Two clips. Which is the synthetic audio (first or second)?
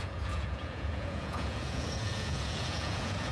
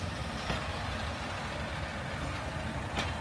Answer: first